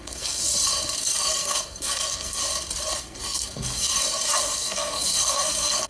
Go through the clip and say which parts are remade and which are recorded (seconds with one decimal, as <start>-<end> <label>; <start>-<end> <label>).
0.0-0.5 remade; 0.5-1.0 recorded; 1.0-2.4 remade; 2.4-3.0 recorded; 3.0-3.9 remade; 3.9-4.4 recorded; 4.4-5.9 remade